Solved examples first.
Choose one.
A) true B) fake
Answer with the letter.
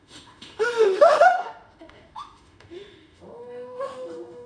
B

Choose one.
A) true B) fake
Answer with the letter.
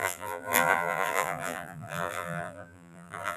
B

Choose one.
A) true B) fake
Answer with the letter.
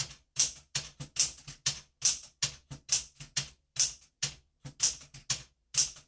A